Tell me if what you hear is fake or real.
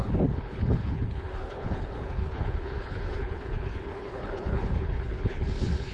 fake